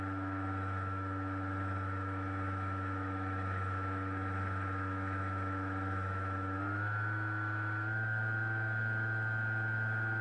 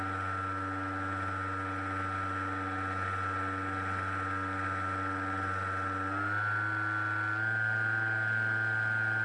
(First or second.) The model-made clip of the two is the first